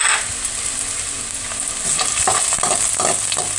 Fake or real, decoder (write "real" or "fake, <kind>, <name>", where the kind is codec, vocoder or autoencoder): real